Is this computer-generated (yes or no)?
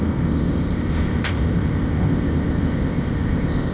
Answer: yes